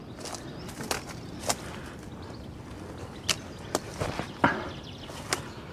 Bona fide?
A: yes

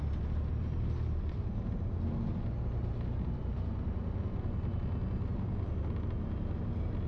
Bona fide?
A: yes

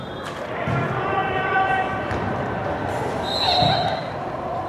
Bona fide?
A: yes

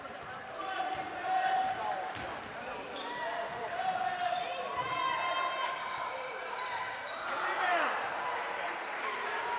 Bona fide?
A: no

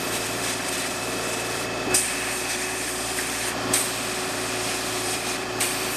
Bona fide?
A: no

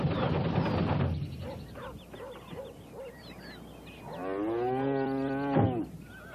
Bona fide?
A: yes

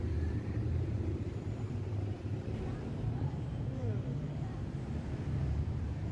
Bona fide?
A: no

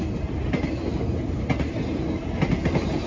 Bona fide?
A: yes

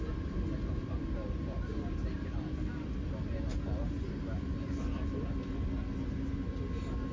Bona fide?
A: yes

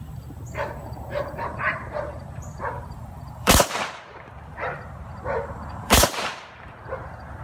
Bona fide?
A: no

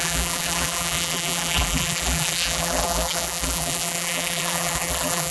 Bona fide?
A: no